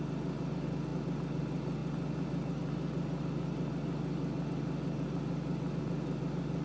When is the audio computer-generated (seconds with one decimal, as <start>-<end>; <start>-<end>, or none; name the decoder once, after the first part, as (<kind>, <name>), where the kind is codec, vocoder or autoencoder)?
none